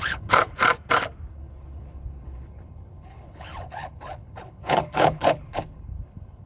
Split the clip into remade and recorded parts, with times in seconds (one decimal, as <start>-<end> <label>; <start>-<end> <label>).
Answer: 0.0-0.6 remade; 0.6-1.3 recorded; 1.3-6.5 remade